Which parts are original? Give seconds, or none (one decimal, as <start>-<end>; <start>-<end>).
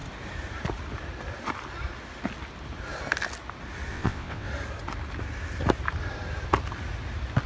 0.0-3.9; 4.5-7.5